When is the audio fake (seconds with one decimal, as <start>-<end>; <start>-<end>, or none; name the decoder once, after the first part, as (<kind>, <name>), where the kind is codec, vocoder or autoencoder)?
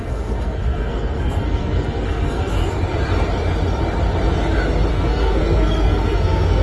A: 0.0-2.6 (codec, SNAC); 4.9-6.6